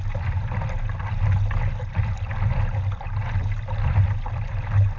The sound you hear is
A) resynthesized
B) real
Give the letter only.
B